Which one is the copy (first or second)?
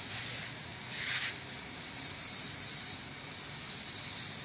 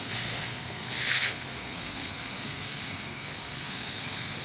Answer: second